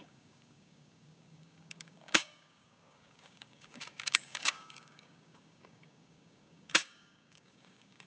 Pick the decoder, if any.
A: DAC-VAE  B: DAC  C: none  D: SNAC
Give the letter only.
B